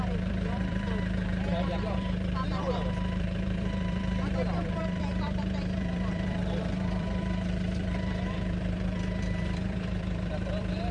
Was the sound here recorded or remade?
remade